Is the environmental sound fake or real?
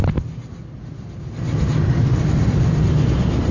real